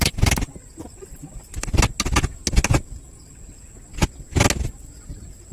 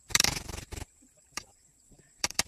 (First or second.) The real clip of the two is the first